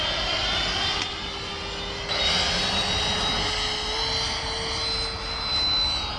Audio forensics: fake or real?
real